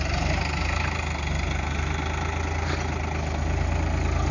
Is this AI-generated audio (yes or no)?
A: no